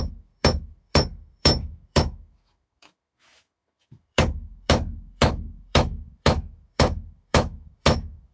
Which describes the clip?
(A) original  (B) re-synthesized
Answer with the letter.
B